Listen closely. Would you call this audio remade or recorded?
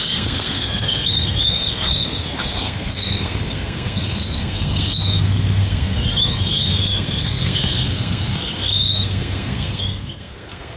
remade